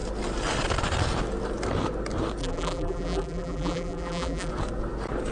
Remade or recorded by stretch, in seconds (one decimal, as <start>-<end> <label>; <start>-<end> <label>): 0.0-2.4 recorded; 2.4-4.5 remade; 4.5-5.3 recorded